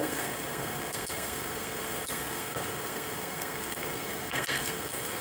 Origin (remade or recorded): remade